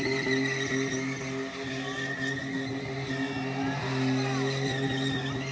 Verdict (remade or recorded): recorded